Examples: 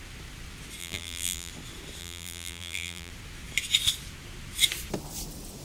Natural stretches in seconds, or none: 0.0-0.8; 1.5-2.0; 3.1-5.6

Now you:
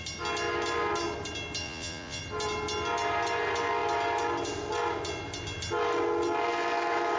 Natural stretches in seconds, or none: 0.0-1.6; 2.2-7.2

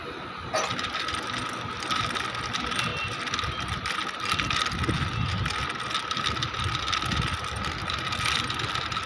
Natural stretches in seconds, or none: 0.0-9.1

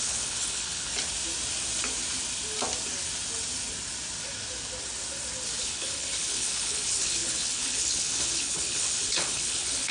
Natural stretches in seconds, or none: 0.9-5.6

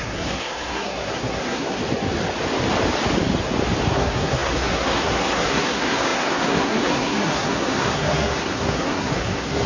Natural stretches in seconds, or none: 1.8-3.9

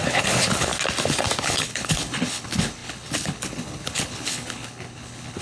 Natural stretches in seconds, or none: 0.7-1.4